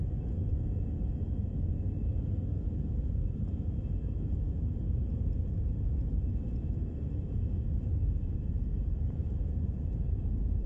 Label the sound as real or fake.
fake